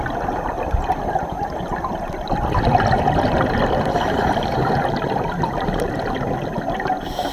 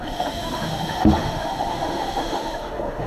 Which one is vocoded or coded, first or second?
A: second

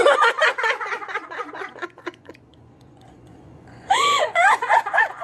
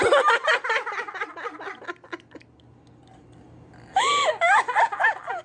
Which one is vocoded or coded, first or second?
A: first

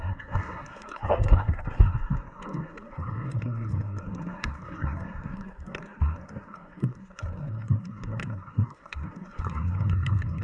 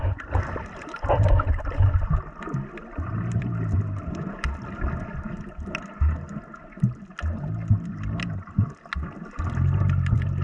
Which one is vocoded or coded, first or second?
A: first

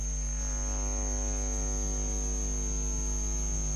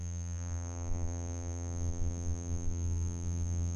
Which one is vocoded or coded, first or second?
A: second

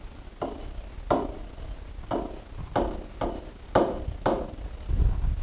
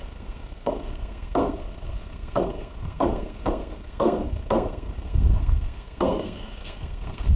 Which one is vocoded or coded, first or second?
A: second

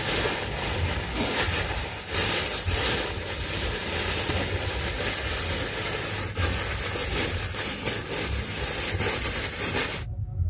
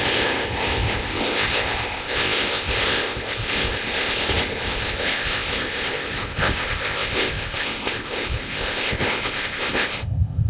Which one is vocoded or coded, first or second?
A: second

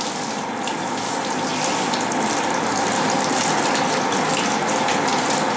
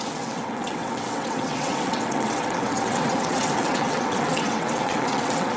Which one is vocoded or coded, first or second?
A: second